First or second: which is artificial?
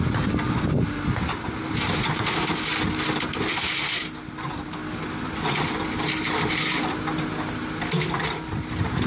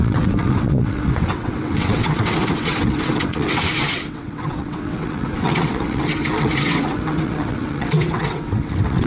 second